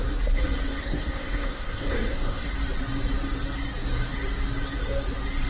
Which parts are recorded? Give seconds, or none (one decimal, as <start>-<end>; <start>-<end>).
0.0-0.8; 2.5-5.5